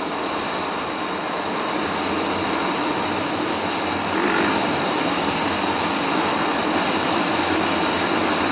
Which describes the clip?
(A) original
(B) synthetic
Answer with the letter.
A